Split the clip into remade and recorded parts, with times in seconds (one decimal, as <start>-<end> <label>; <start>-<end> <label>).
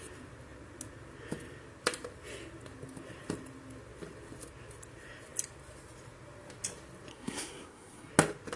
0.0-7.1 recorded; 7.1-8.1 remade; 8.1-8.6 recorded